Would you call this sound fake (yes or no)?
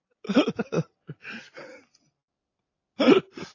no